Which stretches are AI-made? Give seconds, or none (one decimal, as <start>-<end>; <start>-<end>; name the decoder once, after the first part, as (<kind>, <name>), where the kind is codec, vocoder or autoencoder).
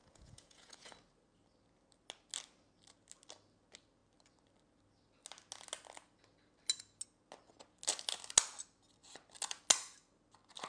0.0-0.9 (vocoder, Vocos)